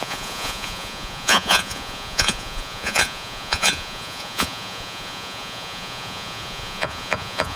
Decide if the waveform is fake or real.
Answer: fake